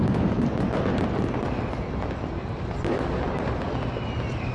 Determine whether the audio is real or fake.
real